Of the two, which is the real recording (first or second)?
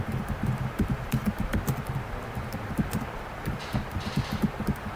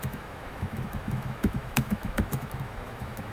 first